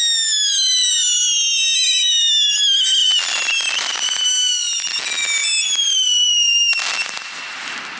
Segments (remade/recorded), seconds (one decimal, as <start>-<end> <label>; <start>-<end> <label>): 0.0-3.0 recorded; 3.0-5.0 remade; 5.0-5.4 recorded; 5.4-6.1 remade; 6.1-8.0 recorded